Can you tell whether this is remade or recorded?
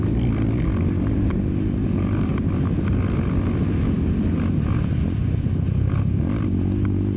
recorded